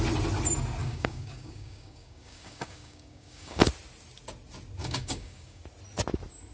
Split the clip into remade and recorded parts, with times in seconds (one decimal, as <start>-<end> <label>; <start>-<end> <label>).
0.0-0.8 recorded; 0.8-3.6 remade; 3.6-4.8 recorded; 4.8-5.6 remade; 5.6-6.5 recorded